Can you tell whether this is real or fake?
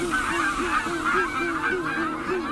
real